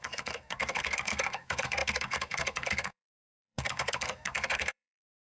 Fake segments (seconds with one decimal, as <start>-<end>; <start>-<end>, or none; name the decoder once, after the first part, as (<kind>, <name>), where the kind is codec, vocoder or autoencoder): 0.0-5.3 (codec, SNAC)